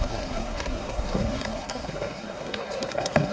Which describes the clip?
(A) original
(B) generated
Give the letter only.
B